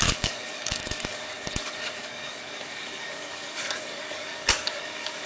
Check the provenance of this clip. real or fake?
fake